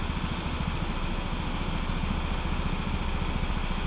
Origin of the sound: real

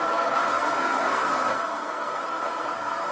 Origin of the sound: fake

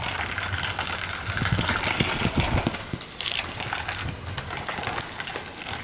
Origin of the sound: real